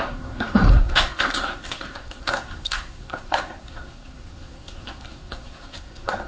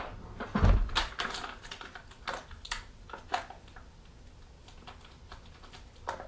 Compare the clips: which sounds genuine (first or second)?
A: second